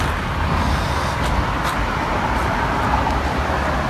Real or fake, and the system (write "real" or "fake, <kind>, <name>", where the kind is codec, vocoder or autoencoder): real